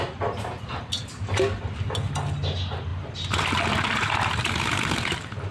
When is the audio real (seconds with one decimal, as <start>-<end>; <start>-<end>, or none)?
0.0-5.5